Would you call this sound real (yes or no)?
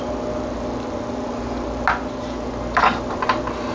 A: yes